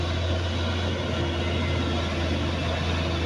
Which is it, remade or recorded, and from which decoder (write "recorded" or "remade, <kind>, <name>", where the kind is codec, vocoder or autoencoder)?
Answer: recorded